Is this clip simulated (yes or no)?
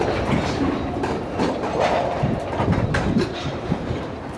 yes